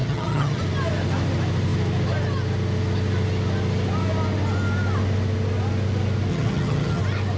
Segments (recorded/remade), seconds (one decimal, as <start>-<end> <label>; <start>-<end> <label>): 0.0-0.6 remade; 0.6-6.3 recorded; 6.3-7.0 remade; 7.0-7.4 recorded